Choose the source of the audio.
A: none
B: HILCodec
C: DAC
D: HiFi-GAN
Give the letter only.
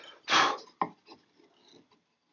A